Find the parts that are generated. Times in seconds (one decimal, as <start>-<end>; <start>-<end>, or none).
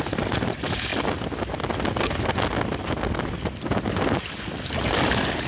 none